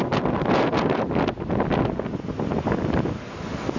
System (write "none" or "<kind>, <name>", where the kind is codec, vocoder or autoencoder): none